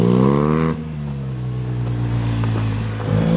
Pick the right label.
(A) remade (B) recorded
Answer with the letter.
B